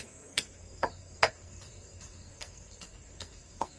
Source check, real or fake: fake